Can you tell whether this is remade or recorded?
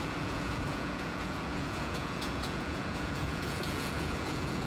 remade